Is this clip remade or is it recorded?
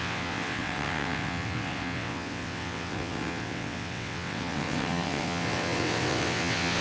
remade